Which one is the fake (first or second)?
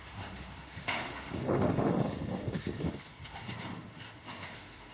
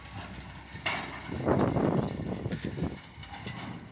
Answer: first